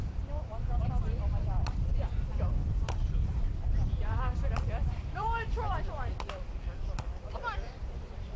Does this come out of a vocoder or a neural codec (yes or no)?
yes